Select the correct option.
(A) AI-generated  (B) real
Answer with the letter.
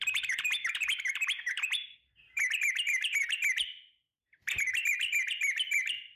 A